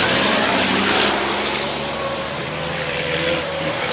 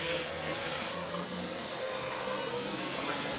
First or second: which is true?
first